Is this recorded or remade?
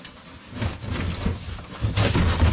recorded